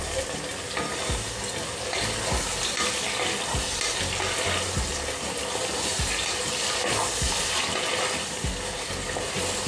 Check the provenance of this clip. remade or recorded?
recorded